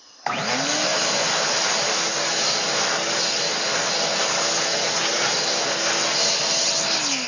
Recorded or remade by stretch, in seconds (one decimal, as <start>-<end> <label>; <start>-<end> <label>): 0.0-7.3 recorded